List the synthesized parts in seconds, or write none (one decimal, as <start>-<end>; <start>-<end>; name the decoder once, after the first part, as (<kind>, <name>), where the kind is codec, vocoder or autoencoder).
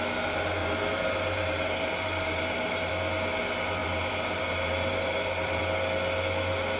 0.6-2.9 (vocoder, BigVGAN v2); 3.8-5.6